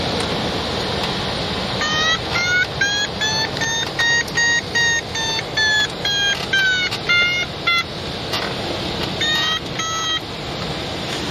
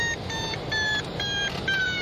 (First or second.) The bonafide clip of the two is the first